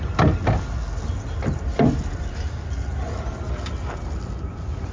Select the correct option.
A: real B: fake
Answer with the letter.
A